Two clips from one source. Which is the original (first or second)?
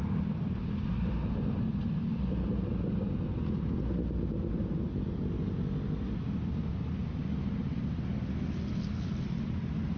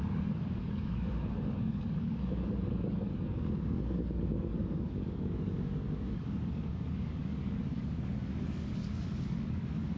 first